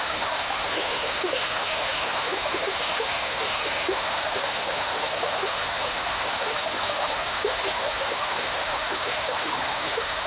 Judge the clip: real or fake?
fake